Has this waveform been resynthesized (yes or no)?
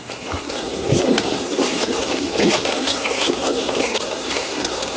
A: yes